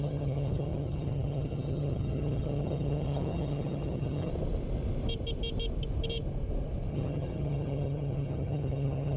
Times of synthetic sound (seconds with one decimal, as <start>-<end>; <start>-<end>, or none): 0.0-4.3; 6.9-9.2